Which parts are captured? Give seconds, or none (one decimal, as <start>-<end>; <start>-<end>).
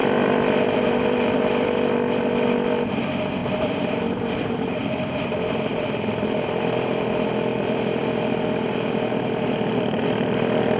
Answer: 2.2-3.4; 6.6-7.5; 9.1-10.8